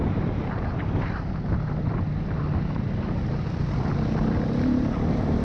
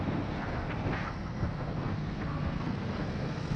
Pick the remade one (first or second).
second